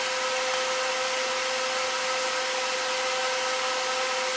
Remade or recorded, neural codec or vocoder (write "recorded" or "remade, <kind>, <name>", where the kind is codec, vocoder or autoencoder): recorded